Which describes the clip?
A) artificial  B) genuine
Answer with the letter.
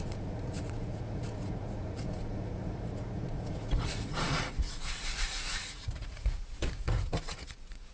A